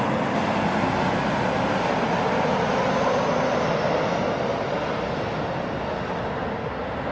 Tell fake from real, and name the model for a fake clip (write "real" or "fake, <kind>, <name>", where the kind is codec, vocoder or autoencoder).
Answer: real